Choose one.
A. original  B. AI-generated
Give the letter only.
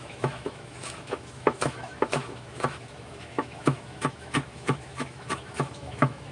B